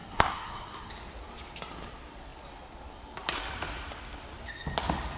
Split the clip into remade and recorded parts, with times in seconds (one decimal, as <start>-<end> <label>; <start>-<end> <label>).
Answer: 0.0-0.9 remade; 0.9-5.2 recorded